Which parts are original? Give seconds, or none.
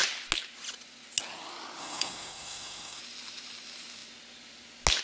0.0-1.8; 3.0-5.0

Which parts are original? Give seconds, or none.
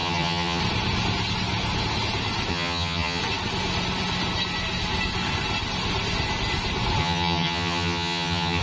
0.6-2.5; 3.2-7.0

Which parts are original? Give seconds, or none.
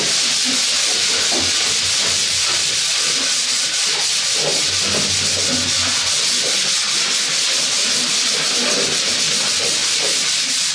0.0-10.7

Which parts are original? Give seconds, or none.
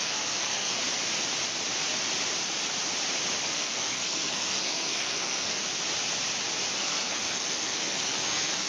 0.8-3.4; 5.6-6.8